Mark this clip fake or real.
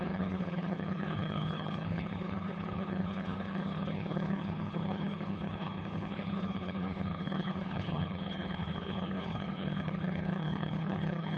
fake